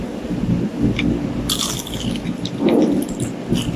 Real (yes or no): yes